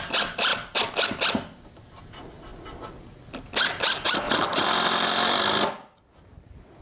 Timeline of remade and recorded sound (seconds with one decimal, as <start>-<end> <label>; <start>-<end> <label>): 0.0-6.8 recorded

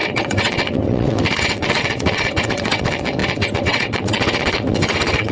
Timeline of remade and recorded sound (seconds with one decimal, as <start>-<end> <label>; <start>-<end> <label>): 0.0-5.3 remade

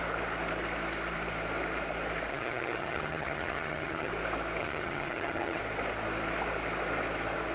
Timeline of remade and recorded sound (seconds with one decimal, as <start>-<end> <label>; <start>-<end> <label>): 0.0-2.3 recorded; 2.3-4.1 remade; 4.1-4.6 recorded; 4.6-5.6 remade; 5.6-7.5 recorded